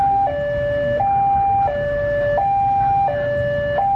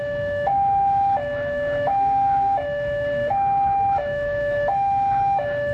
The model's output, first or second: second